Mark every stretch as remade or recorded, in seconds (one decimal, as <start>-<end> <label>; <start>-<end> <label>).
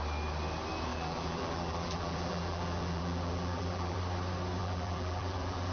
0.0-0.9 recorded; 0.9-4.0 remade; 4.0-4.6 recorded; 4.6-5.7 remade